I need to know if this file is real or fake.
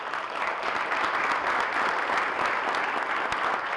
real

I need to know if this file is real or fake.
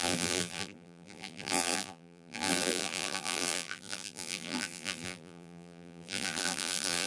fake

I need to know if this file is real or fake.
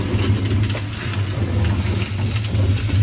real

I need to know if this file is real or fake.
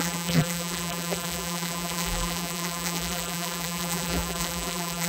fake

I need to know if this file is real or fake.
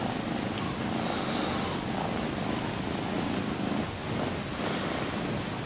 real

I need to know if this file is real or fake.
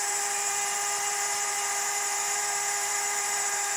fake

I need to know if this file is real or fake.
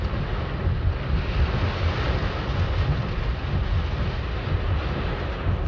real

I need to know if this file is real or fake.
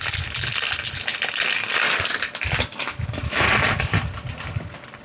fake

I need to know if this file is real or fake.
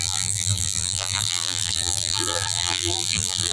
fake